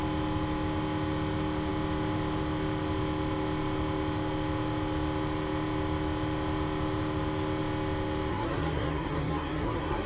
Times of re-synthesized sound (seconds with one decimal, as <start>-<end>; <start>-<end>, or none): 8.3-10.1